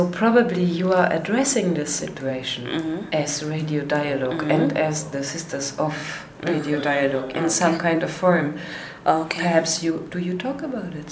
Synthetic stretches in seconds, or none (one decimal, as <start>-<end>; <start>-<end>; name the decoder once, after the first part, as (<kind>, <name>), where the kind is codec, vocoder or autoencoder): 6.0-9.9 (vocoder, BigVGAN v2)